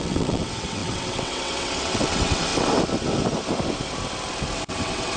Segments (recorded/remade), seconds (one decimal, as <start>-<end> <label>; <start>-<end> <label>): 0.0-2.5 remade; 2.5-4.7 recorded; 4.7-5.2 remade